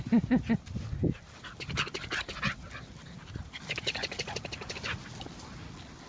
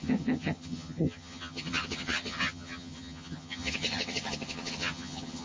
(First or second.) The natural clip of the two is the first